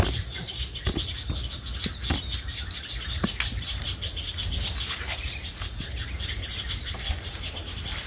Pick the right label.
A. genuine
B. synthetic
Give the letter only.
A